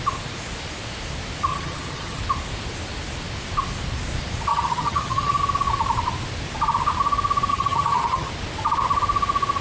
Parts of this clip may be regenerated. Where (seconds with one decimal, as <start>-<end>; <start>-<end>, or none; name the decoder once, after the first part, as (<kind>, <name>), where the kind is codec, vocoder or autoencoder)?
1.5-2.2 (vocoder, HiFi-GAN); 4.5-5.4; 7.5-8.3